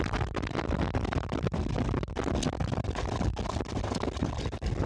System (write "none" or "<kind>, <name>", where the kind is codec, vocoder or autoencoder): none